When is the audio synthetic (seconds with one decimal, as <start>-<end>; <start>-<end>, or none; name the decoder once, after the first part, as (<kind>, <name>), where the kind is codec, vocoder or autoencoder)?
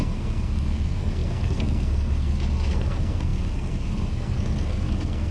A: 0.0-5.3 (codec, SNAC)